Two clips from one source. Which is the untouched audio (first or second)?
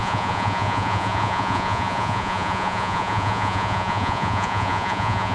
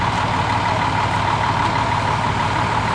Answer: second